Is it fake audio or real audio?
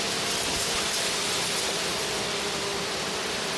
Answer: real